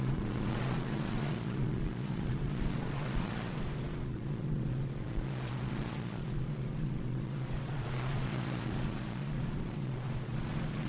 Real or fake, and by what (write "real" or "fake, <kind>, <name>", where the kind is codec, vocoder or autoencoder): fake, vocoder, Vocos